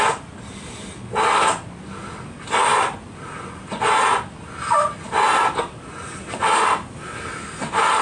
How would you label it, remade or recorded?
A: recorded